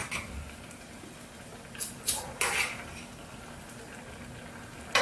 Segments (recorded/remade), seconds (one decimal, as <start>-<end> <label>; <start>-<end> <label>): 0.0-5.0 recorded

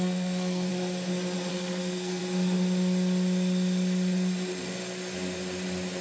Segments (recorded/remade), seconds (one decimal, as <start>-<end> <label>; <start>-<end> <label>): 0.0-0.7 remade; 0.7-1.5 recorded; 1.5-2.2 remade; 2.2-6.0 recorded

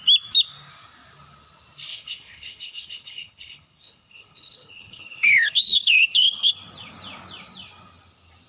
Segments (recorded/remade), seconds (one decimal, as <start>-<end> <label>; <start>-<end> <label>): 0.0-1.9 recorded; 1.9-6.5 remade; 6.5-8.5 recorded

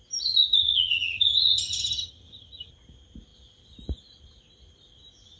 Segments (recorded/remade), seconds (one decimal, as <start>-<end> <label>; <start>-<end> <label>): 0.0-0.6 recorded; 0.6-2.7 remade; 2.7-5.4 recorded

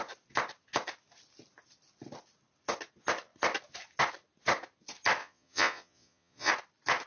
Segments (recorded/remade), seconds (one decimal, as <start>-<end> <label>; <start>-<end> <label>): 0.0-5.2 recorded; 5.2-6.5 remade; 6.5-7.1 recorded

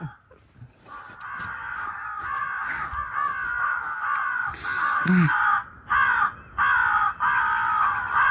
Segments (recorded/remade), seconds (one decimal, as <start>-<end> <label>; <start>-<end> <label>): 0.0-8.3 recorded

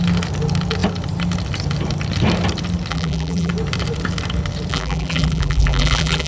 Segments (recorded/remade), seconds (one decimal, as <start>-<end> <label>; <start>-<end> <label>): 0.0-2.9 recorded; 2.9-3.5 remade; 3.5-4.7 recorded; 4.7-6.3 remade

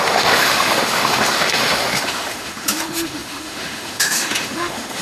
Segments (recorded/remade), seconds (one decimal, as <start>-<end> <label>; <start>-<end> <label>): 0.0-5.0 remade